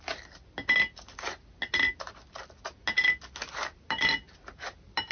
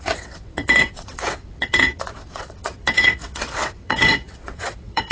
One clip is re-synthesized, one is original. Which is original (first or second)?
first